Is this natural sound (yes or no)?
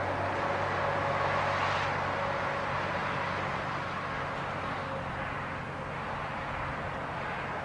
yes